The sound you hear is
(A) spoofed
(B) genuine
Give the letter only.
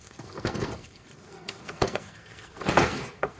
A